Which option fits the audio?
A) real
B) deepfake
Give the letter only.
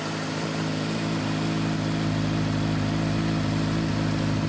A